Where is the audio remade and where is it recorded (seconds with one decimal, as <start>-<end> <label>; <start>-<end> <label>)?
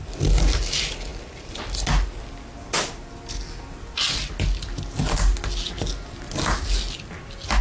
0.0-7.6 recorded